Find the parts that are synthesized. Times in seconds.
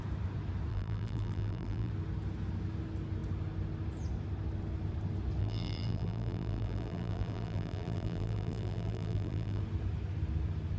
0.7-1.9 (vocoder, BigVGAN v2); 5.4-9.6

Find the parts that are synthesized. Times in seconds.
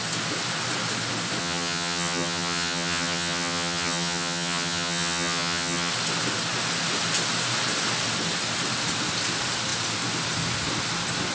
1.4-5.9 (vocoder, HiFi-GAN)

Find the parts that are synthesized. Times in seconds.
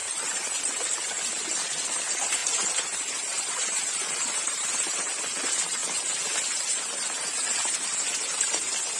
0.0-0.6 (vocoder, BigVGAN v2); 2.4-5.2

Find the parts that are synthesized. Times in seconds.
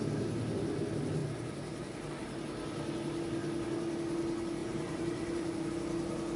1.2-2.1 (vocoder, BigVGAN v2); 4.6-5.7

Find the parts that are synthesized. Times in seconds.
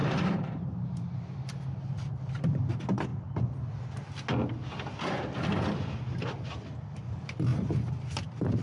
0.0-3.1 (vocoder, BigVGAN v2); 7.0-8.6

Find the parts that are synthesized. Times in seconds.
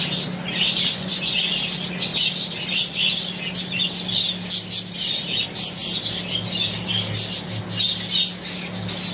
0.9-1.4 (vocoder, Vocos)